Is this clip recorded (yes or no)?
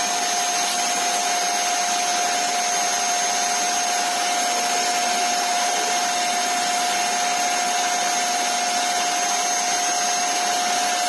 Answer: yes